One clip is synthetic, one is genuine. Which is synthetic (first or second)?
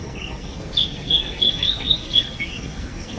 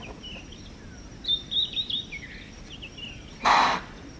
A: first